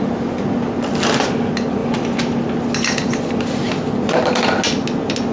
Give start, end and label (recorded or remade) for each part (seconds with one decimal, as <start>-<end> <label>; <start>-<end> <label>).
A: 0.0-5.3 recorded